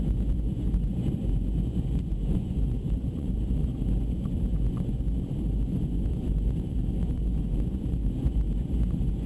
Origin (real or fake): fake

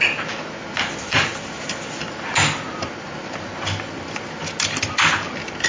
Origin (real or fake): real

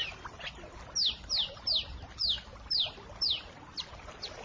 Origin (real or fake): real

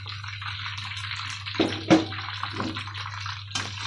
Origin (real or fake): real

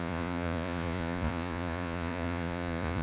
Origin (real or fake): fake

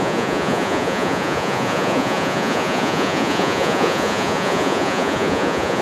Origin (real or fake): fake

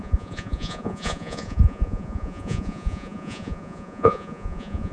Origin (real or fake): fake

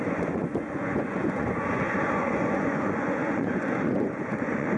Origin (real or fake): fake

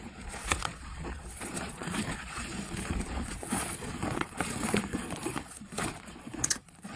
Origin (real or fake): fake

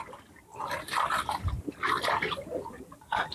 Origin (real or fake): real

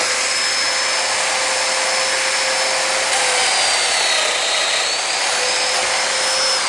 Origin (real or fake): real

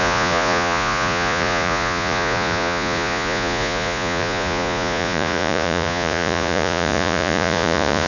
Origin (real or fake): fake